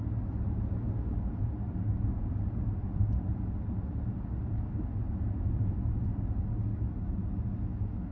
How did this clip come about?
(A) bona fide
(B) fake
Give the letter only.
A